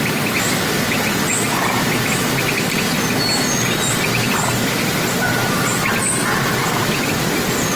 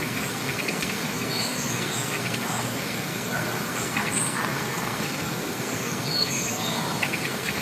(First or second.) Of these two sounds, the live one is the first